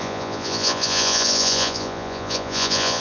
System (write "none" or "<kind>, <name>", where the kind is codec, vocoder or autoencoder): vocoder, Vocos